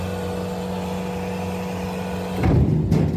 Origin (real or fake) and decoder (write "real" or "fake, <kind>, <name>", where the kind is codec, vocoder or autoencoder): real